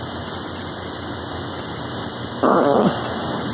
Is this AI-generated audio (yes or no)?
no